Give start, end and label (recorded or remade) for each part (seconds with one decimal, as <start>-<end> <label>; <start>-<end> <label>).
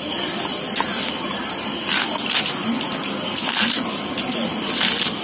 0.0-0.9 recorded; 0.9-1.6 remade; 1.6-5.2 recorded